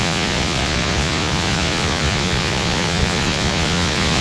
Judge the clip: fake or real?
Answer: fake